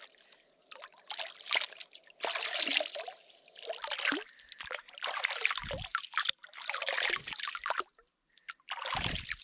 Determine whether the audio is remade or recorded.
recorded